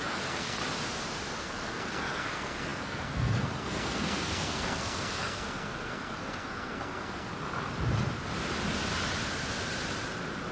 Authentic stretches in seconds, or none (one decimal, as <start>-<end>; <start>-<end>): 0.6-1.4; 7.3-10.5